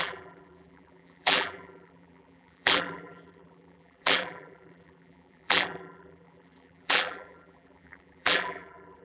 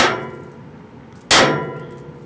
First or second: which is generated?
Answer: first